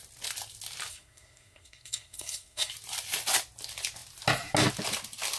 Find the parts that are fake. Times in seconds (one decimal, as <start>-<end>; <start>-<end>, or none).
0.9-2.7